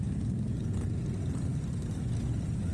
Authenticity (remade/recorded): recorded